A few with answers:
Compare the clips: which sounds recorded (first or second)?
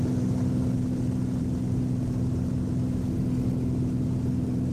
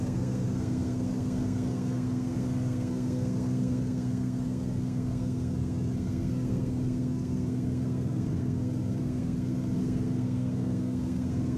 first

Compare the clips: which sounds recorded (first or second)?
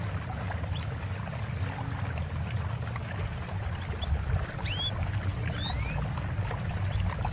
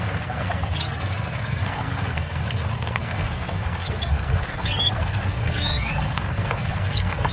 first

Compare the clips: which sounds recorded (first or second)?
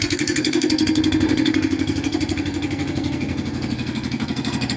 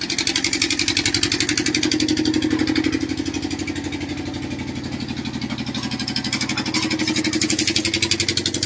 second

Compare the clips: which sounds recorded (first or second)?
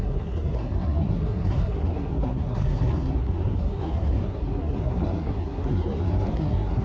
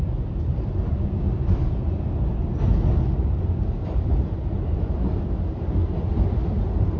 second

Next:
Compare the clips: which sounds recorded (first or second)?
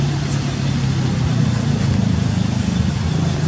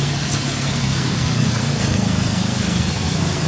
first